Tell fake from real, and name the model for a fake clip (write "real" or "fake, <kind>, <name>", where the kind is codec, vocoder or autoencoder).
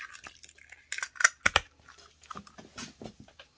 real